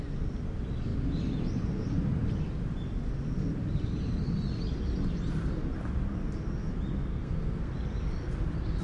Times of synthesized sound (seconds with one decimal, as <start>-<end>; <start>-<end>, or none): 7.1-7.7